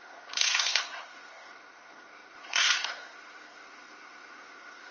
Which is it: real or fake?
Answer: fake